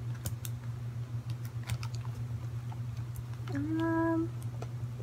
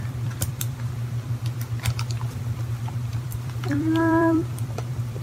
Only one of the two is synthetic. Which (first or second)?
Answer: second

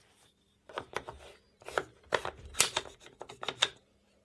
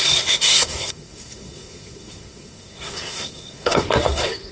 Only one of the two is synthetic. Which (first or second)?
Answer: second